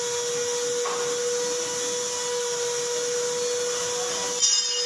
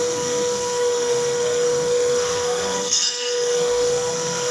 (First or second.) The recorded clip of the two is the first